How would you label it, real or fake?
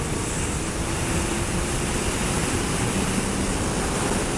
real